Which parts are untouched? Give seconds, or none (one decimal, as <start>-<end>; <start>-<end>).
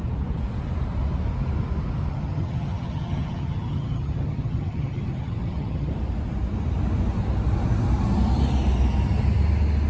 0.0-2.1; 5.9-9.9